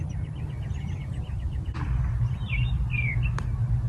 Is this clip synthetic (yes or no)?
no